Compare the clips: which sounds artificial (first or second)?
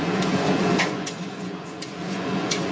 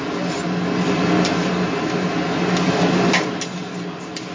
first